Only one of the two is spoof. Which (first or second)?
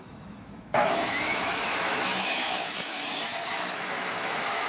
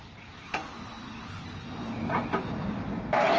first